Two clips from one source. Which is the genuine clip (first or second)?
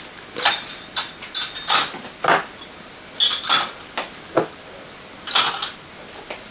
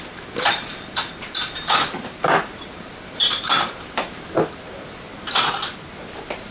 first